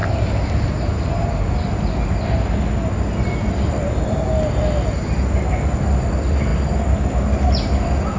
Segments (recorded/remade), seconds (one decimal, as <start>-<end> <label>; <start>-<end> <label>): 0.0-8.2 recorded